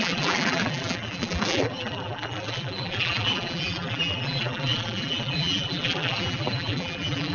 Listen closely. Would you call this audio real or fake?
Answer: fake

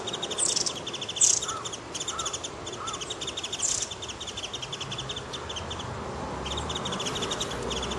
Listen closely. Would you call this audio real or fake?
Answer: real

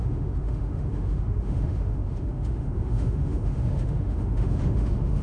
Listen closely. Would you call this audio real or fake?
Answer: fake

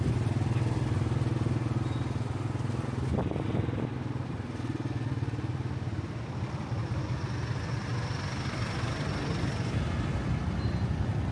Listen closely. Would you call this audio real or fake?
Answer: real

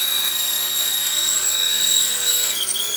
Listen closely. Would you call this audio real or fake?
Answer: fake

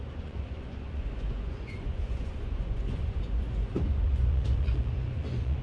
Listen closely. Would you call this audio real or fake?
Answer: fake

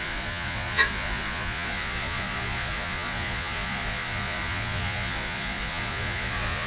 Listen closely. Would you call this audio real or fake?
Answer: fake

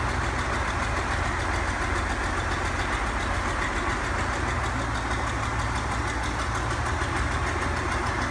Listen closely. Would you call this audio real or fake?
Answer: real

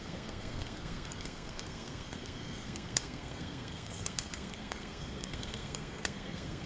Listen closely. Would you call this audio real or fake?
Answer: fake